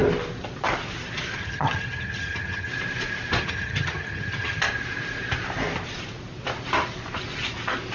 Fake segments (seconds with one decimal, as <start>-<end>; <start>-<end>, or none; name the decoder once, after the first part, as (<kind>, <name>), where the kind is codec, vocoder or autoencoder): 1.4-2.7 (vocoder, HiFi-GAN); 3.4-4.6